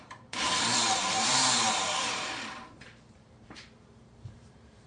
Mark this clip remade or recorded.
remade